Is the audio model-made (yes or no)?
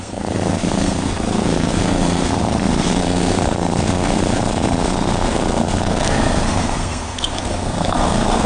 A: yes